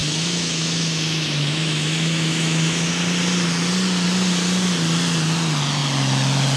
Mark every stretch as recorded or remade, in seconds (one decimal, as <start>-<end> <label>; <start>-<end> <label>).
0.0-2.9 remade; 2.9-6.6 recorded